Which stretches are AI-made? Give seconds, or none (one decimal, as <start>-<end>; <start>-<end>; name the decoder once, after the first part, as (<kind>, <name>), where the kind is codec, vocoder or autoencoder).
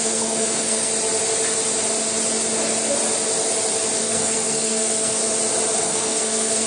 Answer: 0.0-0.9 (codec, SNAC); 4.0-5.2; 5.8-6.7